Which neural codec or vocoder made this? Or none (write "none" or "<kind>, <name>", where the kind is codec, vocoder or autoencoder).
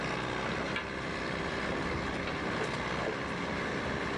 none